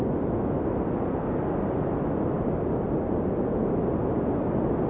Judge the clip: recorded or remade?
recorded